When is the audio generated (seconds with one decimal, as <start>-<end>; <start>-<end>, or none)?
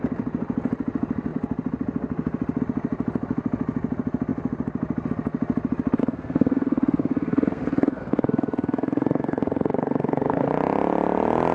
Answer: 6.0-10.5